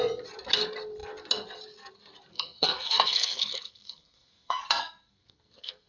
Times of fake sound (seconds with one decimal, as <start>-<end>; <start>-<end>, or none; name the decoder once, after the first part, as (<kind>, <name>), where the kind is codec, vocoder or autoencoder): 2.3-5.9 (codec, SNAC)